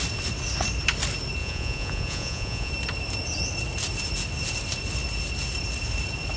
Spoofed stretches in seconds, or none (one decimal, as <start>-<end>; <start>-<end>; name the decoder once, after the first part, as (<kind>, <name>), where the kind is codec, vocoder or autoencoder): 1.4-2.7 (vocoder, Vocos)

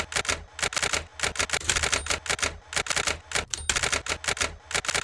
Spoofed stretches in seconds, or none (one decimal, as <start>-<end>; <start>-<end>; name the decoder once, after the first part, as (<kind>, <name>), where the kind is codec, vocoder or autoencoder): none

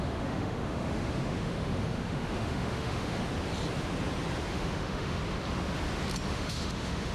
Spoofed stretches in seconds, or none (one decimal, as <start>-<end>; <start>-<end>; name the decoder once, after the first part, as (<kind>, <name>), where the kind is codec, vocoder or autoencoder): 0.0-3.2 (autoencoder, DAC-VAE); 4.5-5.2; 6.3-7.1